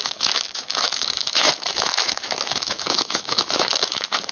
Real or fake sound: fake